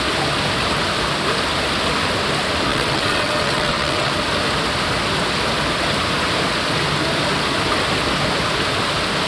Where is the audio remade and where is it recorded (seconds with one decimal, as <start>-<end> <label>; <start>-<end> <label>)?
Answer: 0.0-2.7 recorded; 2.7-4.1 remade; 4.1-9.3 recorded